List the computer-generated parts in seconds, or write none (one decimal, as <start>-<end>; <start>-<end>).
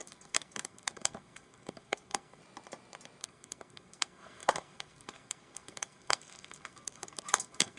0.0-2.4; 3.2-7.8